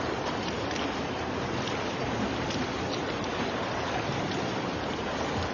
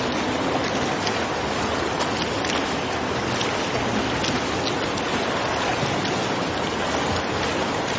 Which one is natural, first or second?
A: second